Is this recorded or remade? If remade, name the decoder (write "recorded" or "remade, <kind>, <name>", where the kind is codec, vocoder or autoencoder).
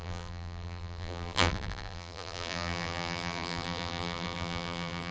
remade, vocoder, BigVGAN v2